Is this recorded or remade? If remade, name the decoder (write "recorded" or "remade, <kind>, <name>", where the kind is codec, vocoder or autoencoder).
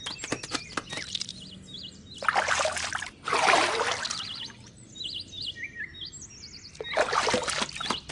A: recorded